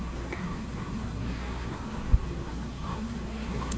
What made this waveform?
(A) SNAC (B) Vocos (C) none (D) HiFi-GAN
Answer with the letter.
A